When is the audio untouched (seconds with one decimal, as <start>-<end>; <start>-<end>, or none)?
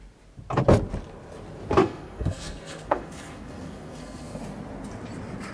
0.0-1.8; 4.4-5.5